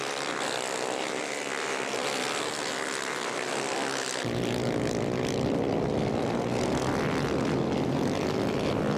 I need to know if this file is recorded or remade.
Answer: recorded